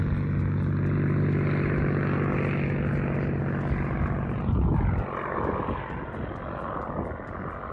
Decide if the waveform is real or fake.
real